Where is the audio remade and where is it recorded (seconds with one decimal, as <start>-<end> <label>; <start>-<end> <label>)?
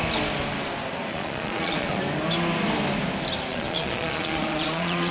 0.0-1.1 recorded; 1.1-2.0 remade; 2.0-3.5 recorded; 3.5-5.1 remade